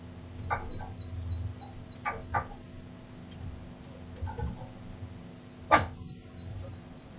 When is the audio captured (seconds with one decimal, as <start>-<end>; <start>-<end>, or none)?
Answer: 0.0-6.5